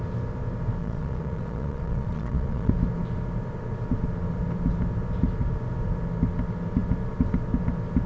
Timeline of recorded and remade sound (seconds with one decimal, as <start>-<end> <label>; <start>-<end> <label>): 0.0-0.8 recorded; 0.8-2.7 remade; 2.7-8.1 recorded